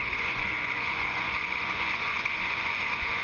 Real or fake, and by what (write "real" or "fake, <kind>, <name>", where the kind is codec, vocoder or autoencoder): fake, vocoder, Vocos